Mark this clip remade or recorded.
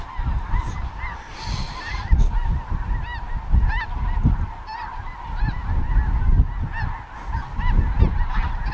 recorded